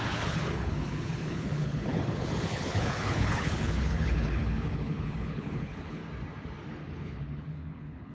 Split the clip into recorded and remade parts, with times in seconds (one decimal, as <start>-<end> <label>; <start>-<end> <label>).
0.0-6.0 remade; 6.0-6.7 recorded; 6.7-8.1 remade